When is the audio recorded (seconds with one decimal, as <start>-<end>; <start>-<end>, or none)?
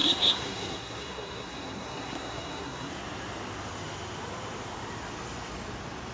2.9-6.1